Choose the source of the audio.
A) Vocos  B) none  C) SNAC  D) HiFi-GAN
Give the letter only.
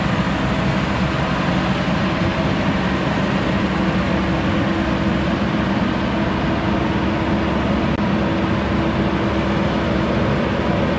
B